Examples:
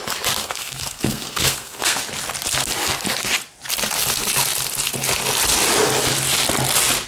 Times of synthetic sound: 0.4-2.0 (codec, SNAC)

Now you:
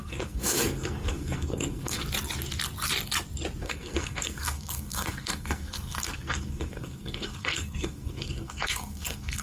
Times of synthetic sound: 0.0-2.0 (codec, SNAC); 3.6-9.4

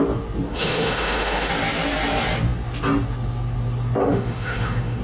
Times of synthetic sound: 0.5-1.5 (autoencoder, DAC-VAE); 4.0-5.0

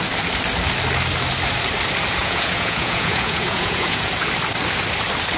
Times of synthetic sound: 2.2-4.1 (vocoder, Vocos)

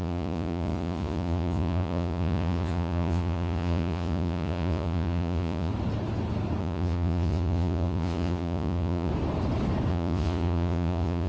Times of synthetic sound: 0.0-5.7 (vocoder, Vocos); 6.6-9.1; 9.9-11.3